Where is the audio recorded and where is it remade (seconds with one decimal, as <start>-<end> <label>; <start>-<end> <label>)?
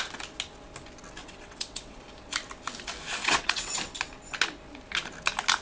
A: 0.0-1.2 recorded; 1.2-2.0 remade; 2.0-3.2 recorded; 3.2-3.8 remade; 3.8-5.6 recorded